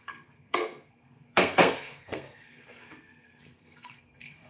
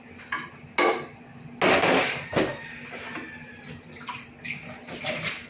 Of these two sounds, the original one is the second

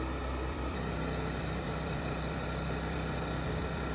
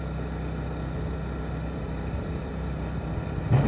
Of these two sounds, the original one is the second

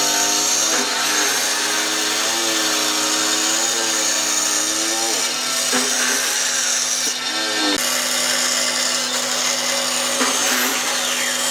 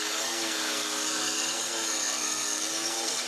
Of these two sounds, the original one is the first